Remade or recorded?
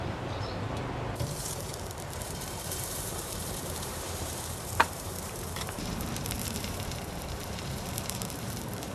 remade